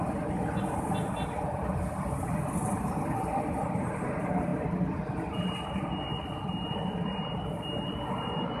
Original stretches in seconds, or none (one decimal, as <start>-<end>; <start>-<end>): 0.0-8.6

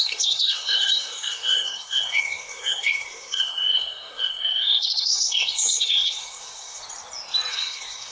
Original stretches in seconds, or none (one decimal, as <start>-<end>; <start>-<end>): 6.8-7.5

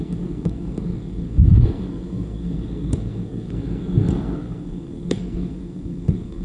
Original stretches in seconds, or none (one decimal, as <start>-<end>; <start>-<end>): none

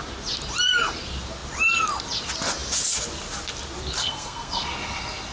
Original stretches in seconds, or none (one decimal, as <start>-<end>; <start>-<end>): 0.0-4.0; 4.7-5.3

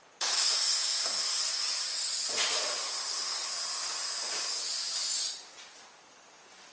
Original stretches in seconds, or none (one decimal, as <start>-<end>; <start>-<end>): 0.0-0.4; 1.4-2.8; 3.5-6.7

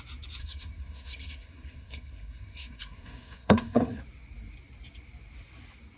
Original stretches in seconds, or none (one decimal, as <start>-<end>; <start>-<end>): 0.0-0.4; 4.0-6.0

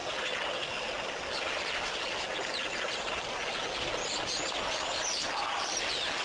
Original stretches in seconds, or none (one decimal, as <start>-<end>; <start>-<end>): 0.0-6.2

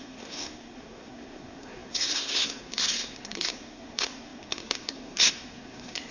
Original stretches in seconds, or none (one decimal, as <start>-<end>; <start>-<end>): none